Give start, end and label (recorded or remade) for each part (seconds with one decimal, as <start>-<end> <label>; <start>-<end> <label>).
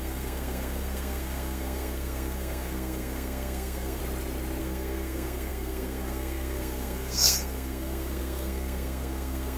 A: 0.0-4.0 remade; 4.0-4.6 recorded; 4.6-9.6 remade